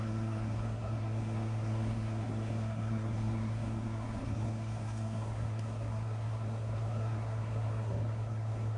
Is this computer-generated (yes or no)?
yes